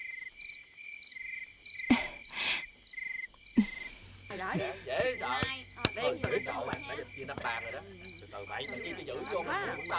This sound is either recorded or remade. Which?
recorded